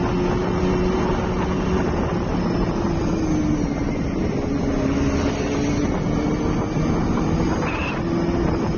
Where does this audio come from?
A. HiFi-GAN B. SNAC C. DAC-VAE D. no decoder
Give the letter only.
D